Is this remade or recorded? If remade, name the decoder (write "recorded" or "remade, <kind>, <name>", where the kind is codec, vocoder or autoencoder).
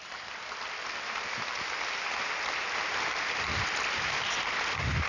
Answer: recorded